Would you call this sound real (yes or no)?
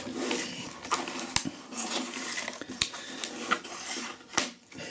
yes